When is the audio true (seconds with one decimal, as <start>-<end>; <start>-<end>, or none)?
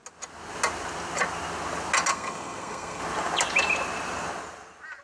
0.0-2.1; 3.0-5.0